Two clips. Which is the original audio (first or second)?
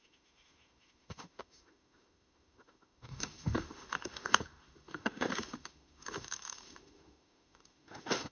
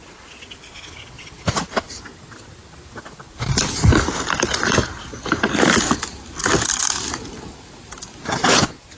second